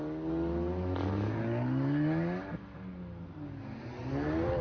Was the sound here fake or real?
real